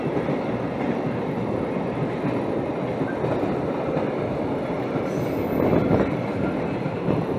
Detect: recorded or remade recorded